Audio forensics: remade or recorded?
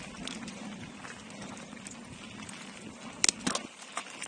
recorded